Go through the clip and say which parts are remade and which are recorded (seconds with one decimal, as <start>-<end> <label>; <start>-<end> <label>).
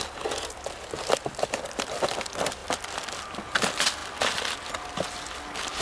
0.0-5.8 recorded